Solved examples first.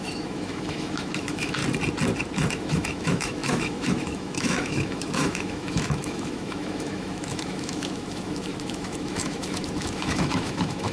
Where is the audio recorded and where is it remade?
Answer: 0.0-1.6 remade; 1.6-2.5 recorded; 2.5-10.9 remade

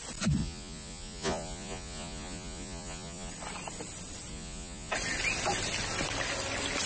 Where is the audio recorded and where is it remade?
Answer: 0.0-0.4 recorded; 0.4-3.3 remade; 3.3-4.3 recorded; 4.3-4.9 remade; 4.9-6.9 recorded